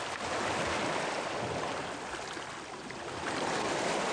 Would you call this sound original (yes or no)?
yes